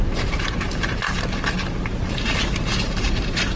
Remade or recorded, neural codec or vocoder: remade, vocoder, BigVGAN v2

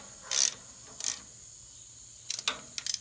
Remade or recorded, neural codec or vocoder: recorded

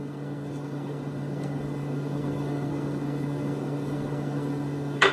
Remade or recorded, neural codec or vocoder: remade, codec, SNAC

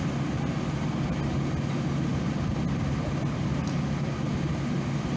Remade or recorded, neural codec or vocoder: recorded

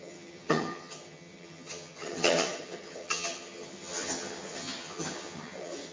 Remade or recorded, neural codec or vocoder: remade, vocoder, HiFi-GAN